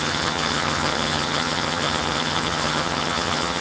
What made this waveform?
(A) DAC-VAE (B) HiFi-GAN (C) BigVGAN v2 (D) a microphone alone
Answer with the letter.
B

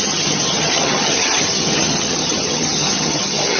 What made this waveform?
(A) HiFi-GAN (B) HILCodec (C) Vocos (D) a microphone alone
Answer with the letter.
A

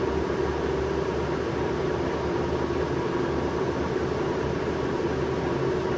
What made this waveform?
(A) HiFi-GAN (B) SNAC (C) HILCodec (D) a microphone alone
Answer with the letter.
D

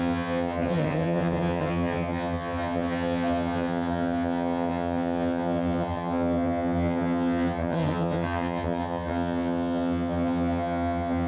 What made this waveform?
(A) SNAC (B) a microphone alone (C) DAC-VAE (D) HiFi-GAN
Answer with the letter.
D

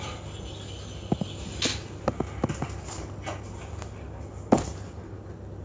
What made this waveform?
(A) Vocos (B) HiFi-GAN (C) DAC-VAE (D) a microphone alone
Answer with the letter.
D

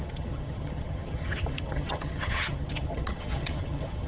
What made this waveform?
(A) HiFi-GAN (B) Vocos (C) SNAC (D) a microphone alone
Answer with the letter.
A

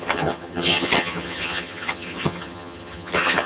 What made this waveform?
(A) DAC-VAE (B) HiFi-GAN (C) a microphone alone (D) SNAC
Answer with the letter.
B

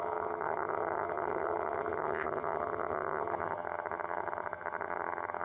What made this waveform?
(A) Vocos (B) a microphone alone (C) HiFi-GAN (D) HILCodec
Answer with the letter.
C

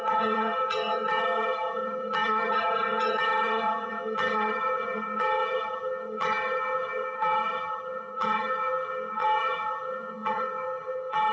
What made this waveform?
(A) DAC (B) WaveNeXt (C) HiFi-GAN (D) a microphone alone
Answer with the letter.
C